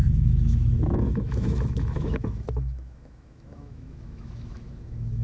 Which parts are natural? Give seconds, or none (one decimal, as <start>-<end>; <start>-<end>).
none